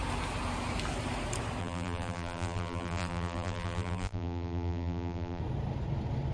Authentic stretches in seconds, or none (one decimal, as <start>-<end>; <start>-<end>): 0.0-1.6; 5.4-6.3